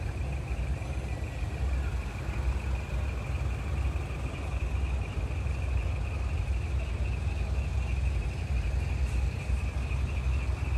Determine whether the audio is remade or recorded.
recorded